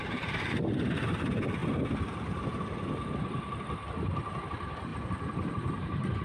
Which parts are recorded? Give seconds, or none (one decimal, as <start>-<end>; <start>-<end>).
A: 1.6-4.5; 4.9-5.5